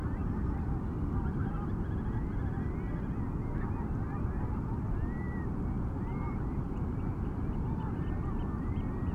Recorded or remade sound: recorded